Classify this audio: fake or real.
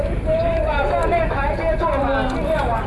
real